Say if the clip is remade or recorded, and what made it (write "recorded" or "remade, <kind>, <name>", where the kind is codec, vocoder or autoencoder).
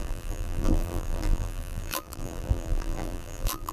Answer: remade, vocoder, BigVGAN v2